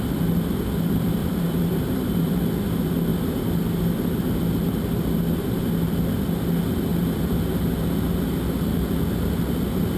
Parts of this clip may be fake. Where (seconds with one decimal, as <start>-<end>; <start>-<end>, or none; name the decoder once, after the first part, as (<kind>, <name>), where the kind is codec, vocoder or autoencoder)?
1.2-2.4 (vocoder, BigVGAN v2)